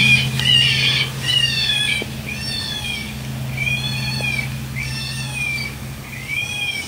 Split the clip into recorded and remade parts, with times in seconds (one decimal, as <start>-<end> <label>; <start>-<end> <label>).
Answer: 0.0-1.3 recorded; 1.3-1.9 remade; 1.9-2.6 recorded; 2.6-3.3 remade; 3.3-4.8 recorded; 4.8-6.9 remade